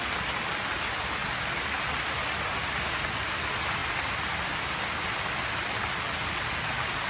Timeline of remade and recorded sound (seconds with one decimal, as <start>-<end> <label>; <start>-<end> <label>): 0.0-7.1 recorded